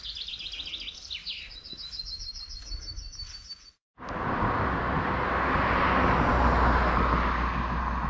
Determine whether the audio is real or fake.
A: real